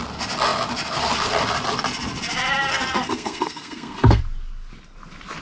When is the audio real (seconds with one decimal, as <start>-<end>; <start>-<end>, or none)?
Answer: 0.0-2.7; 4.2-5.4